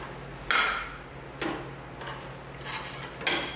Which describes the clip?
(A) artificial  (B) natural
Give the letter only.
B